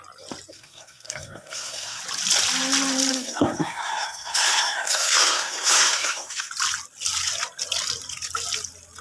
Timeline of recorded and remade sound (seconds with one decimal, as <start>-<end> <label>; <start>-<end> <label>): 0.0-0.5 recorded; 0.5-2.0 remade; 2.0-3.1 recorded; 3.1-6.5 remade; 6.5-9.0 recorded